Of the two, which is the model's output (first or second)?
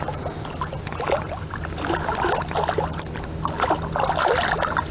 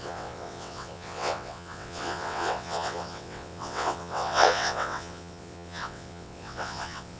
second